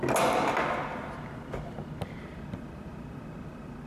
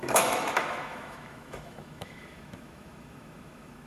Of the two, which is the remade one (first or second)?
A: second